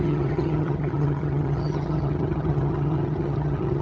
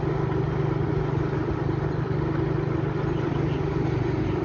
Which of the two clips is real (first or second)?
second